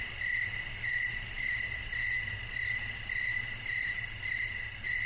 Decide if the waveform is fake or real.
real